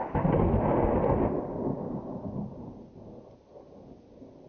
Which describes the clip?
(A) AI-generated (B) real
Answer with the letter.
B